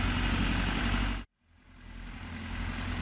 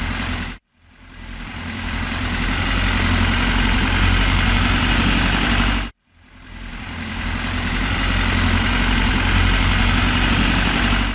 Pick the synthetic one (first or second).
second